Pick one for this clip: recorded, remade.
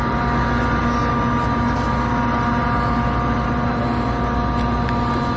recorded